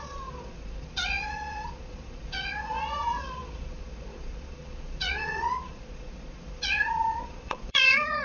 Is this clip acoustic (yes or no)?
no